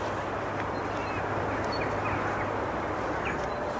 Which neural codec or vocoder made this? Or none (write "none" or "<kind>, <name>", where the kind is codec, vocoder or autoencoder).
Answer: none